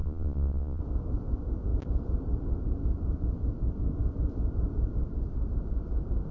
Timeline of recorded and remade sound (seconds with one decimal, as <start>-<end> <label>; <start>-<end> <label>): 0.0-0.8 remade; 0.8-6.3 recorded